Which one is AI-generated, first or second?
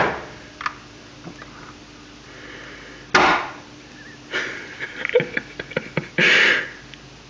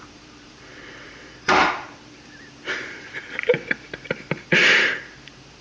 second